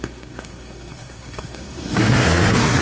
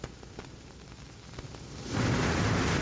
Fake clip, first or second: first